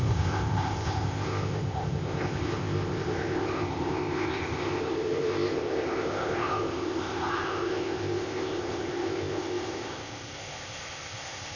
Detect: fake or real fake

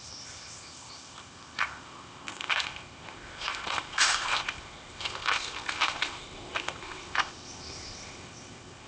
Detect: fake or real fake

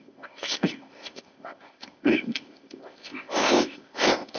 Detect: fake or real fake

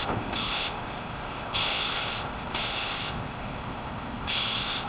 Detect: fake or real fake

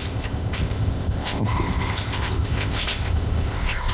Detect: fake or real fake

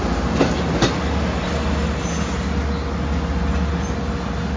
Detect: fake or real real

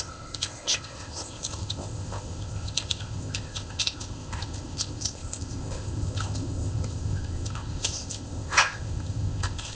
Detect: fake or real fake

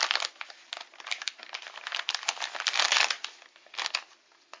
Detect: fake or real real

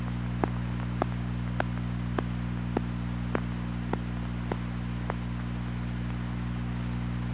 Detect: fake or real real